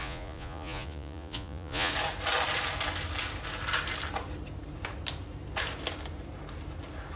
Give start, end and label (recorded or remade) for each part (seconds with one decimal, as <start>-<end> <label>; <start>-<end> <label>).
0.0-1.9 remade; 1.9-7.2 recorded

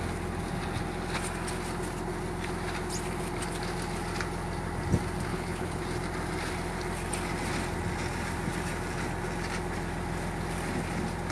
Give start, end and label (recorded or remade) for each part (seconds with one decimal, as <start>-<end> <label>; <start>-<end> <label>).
0.0-5.3 recorded; 5.3-5.8 remade; 5.8-11.3 recorded